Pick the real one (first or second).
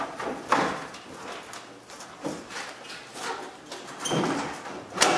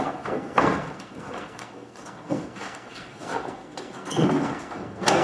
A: first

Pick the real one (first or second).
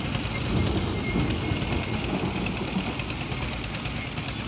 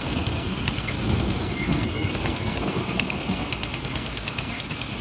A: first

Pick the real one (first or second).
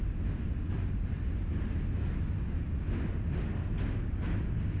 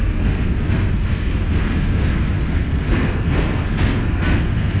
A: first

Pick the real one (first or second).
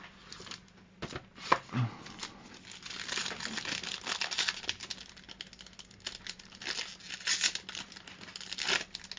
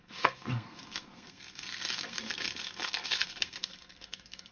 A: first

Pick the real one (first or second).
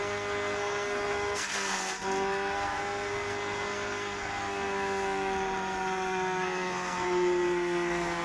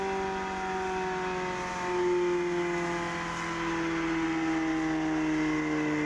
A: second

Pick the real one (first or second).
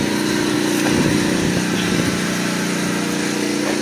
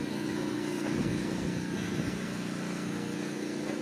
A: first